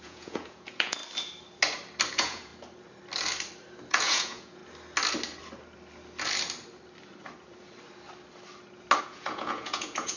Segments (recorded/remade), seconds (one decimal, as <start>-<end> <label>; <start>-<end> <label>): 0.0-1.0 remade; 1.0-2.1 recorded; 2.1-2.5 remade; 2.5-3.9 recorded; 3.9-4.6 remade; 4.6-9.0 recorded; 9.0-10.2 remade